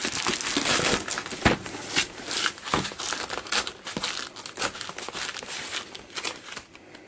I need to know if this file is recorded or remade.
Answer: recorded